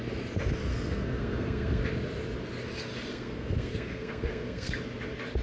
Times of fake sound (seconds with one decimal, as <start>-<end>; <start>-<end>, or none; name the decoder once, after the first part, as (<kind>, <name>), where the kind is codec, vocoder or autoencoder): 0.7-1.8 (codec, SNAC); 3.1-4.7